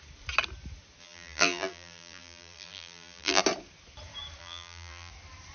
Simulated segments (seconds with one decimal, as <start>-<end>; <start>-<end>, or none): 1.0-3.4; 4.4-5.1